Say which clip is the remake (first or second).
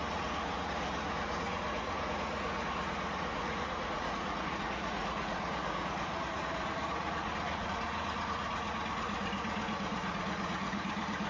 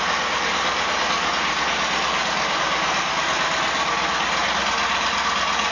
first